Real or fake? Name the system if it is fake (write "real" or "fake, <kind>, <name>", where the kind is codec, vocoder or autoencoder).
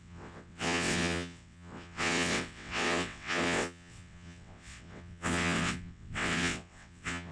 fake, vocoder, WaveNeXt